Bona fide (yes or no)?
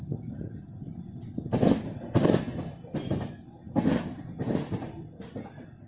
yes